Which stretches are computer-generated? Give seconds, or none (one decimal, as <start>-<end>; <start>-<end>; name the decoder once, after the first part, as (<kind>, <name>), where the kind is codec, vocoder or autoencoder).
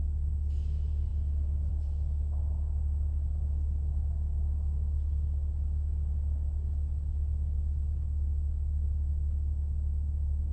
none